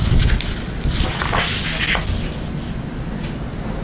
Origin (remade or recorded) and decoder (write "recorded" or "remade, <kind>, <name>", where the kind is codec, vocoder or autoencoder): recorded